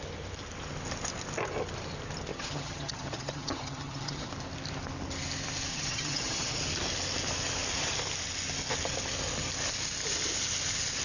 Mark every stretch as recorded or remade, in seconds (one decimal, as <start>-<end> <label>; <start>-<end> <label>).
0.0-2.3 recorded; 2.3-4.3 remade; 4.3-5.7 recorded; 5.7-6.6 remade; 6.6-11.0 recorded